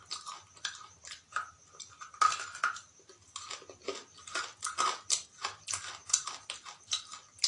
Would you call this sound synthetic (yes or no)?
no